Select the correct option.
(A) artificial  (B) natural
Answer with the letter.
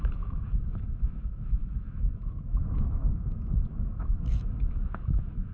A